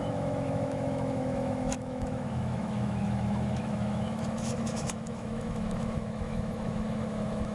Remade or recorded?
remade